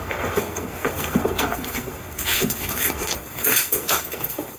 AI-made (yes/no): yes